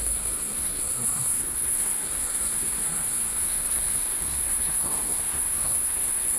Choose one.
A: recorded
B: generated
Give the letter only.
B